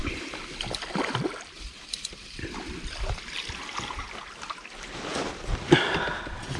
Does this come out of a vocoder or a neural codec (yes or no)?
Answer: no